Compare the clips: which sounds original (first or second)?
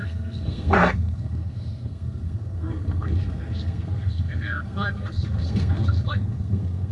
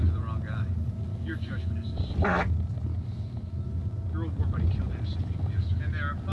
second